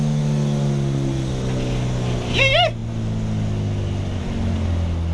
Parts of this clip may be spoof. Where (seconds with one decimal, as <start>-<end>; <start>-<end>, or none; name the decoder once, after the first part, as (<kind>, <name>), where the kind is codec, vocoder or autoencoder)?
none